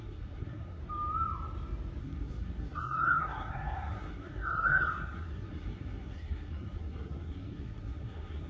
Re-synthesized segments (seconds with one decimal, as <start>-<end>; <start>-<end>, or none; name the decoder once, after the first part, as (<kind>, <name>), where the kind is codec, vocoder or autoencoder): 0.0-0.8 (codec, SNAC); 2.0-8.5